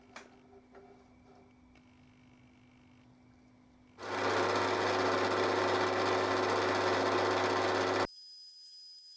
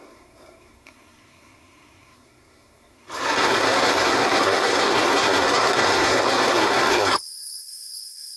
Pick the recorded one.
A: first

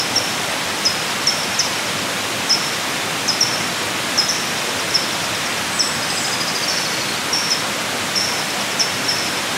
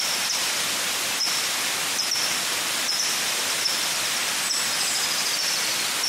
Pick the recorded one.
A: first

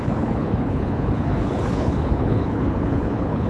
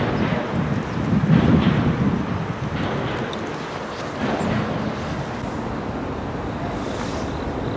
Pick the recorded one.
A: second